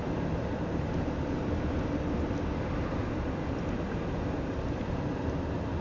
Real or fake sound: real